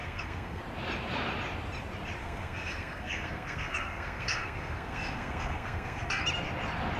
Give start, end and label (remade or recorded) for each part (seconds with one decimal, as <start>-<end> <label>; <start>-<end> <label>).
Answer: 0.0-0.6 remade; 0.6-2.2 recorded; 2.2-6.2 remade; 6.2-7.0 recorded